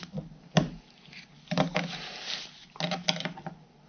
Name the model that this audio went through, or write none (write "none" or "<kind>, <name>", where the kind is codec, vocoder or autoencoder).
none